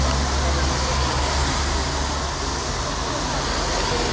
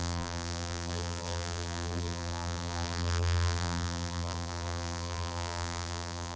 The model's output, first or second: second